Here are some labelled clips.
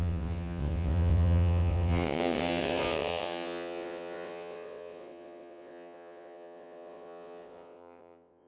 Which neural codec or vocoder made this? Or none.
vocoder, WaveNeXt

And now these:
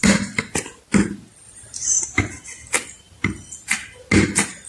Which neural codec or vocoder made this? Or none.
none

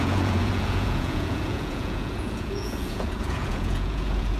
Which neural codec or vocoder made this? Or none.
vocoder, Vocos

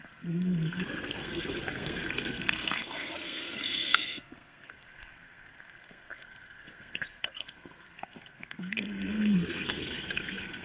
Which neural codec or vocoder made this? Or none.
codec, SNAC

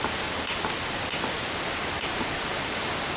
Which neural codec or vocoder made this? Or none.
none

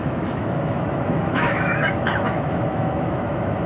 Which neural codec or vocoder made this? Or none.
autoencoder, DAC-VAE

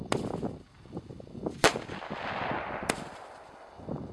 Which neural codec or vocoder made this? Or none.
none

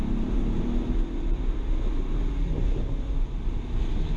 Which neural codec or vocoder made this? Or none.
none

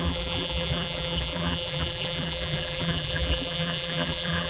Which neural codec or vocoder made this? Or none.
vocoder, BigVGAN v2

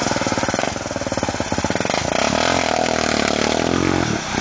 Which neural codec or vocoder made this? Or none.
none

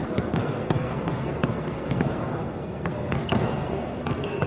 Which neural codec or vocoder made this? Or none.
codec, SNAC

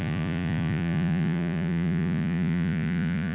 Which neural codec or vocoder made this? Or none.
vocoder, Vocos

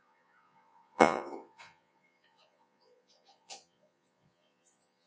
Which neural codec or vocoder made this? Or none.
vocoder, Vocos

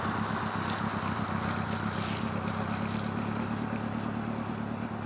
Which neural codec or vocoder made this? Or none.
none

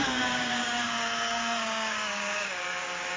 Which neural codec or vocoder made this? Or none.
codec, DAC